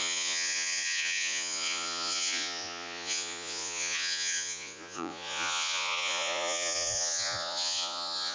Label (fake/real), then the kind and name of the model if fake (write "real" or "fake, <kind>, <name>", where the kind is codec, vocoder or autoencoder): fake, vocoder, Vocos